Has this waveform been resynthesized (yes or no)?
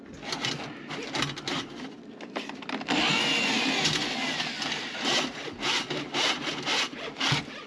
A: no